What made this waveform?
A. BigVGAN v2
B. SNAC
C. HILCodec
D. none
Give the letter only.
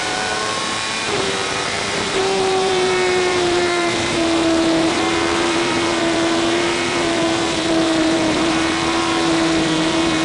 A